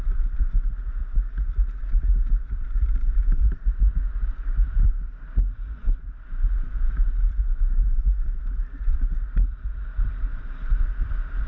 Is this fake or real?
fake